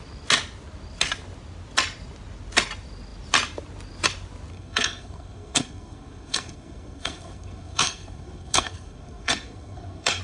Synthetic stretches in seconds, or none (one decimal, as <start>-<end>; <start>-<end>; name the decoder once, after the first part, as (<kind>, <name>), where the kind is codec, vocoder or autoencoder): 4.5-10.2 (codec, SNAC)